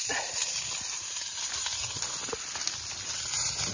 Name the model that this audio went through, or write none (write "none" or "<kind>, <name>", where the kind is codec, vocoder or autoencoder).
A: none